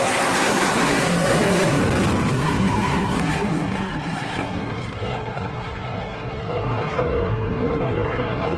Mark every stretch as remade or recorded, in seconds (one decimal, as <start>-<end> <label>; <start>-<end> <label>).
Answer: 0.0-1.8 remade; 1.8-2.3 recorded; 2.3-8.6 remade